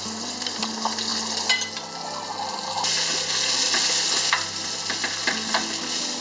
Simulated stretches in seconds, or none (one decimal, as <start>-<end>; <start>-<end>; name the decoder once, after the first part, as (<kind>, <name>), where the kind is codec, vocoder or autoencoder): none